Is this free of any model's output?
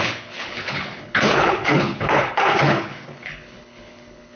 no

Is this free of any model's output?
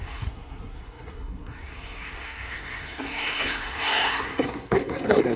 no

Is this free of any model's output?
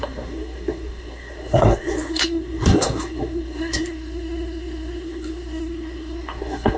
no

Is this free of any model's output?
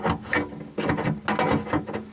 yes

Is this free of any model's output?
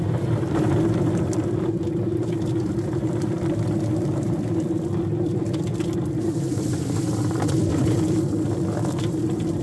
no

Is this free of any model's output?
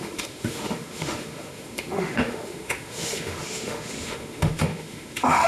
no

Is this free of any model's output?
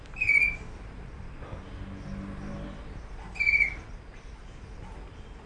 yes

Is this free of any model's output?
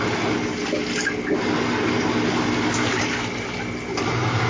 yes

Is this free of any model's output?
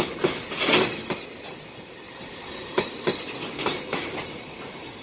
yes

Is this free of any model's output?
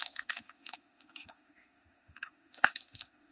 no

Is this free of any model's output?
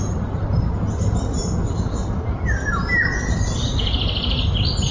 yes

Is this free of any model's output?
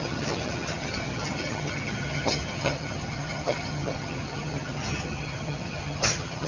no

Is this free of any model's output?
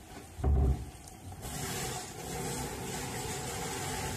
yes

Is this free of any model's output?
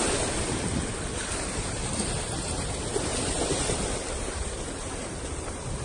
yes